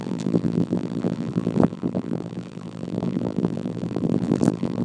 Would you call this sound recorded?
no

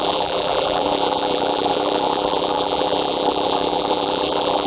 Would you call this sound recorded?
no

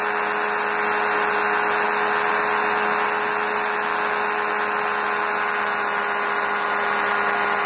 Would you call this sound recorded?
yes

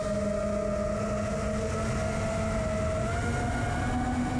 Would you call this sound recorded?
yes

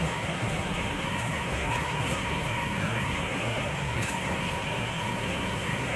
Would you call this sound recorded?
no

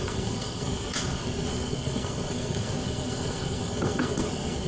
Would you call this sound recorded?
no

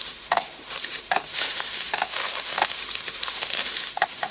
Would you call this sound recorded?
no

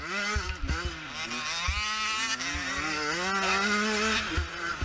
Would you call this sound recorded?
yes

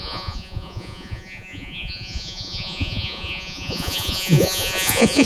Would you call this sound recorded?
no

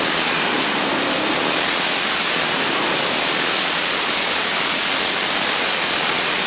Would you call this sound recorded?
yes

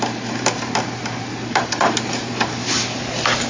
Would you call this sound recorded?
yes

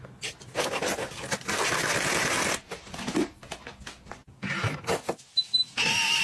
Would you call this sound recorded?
yes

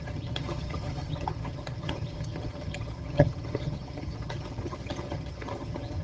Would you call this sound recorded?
no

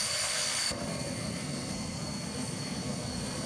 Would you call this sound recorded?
no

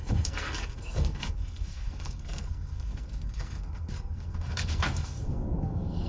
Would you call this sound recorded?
no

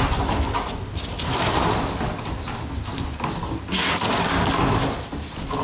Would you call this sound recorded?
yes